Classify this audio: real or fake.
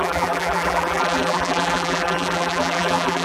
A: fake